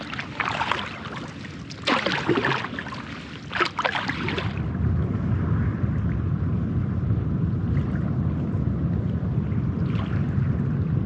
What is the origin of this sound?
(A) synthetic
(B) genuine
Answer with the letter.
B